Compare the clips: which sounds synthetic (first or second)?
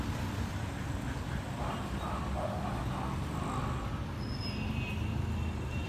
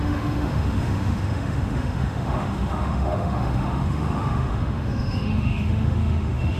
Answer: second